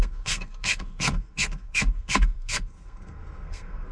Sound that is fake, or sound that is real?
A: fake